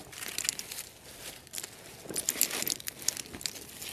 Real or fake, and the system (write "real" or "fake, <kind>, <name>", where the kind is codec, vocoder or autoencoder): real